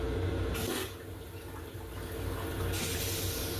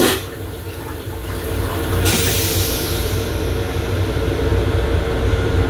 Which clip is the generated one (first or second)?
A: second